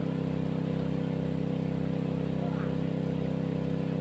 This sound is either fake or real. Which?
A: real